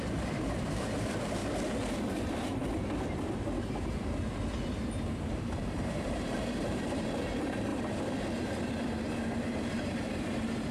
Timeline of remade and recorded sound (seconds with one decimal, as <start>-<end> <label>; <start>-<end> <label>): 0.0-1.4 remade; 1.4-2.1 recorded; 2.1-2.6 remade; 2.6-5.6 recorded; 5.6-7.7 remade; 7.7-9.4 recorded; 9.4-10.7 remade